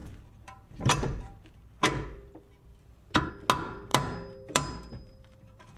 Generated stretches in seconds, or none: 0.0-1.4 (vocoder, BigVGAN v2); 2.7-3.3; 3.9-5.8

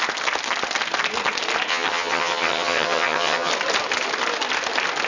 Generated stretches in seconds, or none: 1.7-3.5 (vocoder, HiFi-GAN)

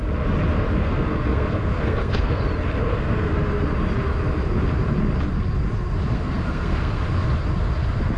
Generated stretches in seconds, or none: 0.8-2.4 (codec, SNAC); 2.9-3.4; 6.1-7.0

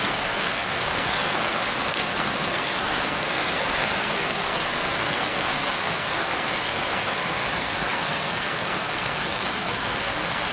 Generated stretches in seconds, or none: 0.0-10.5 (codec, SNAC)